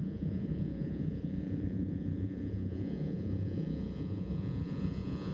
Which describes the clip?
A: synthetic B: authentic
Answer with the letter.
A